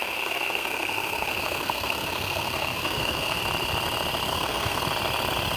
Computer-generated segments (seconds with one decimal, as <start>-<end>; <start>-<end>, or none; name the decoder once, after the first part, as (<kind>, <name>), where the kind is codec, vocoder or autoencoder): 0.0-3.4 (codec, SNAC); 4.3-4.8